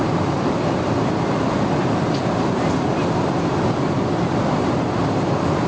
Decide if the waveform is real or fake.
real